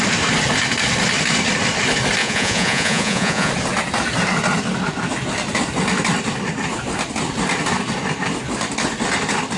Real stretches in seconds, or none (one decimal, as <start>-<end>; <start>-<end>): 0.0-2.2; 3.5-9.6